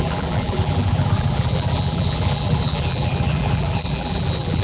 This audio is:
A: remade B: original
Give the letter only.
A